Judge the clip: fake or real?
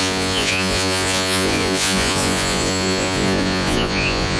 fake